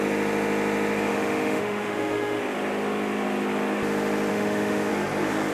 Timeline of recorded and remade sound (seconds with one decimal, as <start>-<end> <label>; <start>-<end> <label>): 0.0-1.1 recorded; 1.1-2.4 remade; 2.4-4.3 recorded; 4.3-4.9 remade; 4.9-5.5 recorded